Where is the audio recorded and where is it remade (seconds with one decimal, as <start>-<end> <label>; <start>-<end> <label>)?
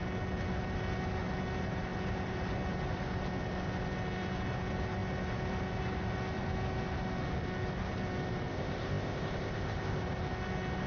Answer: 0.0-8.5 recorded; 8.5-10.0 remade; 10.0-10.9 recorded